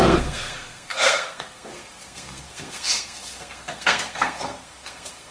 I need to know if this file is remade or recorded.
remade